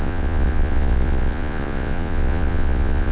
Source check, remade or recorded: remade